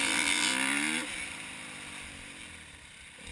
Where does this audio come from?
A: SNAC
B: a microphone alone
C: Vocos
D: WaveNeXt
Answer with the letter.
B